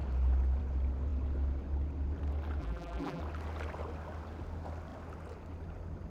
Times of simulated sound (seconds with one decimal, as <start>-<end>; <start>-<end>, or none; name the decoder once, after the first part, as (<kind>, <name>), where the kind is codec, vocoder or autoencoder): 2.6-3.2 (vocoder, BigVGAN v2)